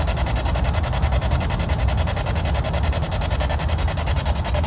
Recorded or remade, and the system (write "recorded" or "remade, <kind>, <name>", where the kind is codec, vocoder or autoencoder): recorded